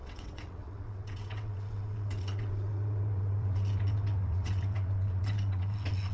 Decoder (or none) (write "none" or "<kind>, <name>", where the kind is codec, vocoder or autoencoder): vocoder, WaveNeXt